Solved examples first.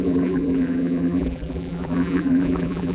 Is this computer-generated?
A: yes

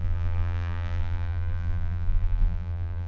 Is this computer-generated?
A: yes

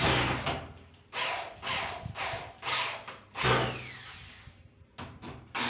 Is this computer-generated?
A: no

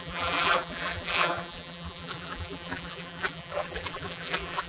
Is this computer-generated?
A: yes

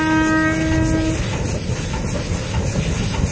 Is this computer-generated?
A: no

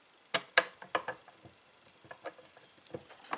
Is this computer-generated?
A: no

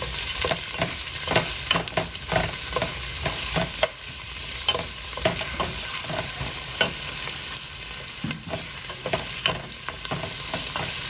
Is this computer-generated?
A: yes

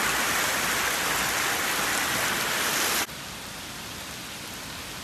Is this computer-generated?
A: no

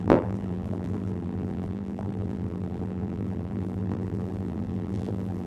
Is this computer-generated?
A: yes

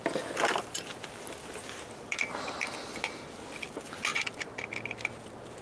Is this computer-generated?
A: no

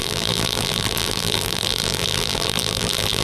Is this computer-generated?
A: yes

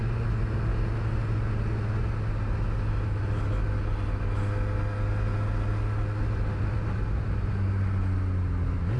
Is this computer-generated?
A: no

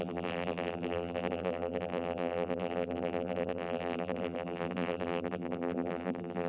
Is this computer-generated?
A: yes